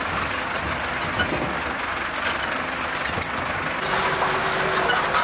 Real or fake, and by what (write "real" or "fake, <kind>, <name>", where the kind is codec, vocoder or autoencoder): real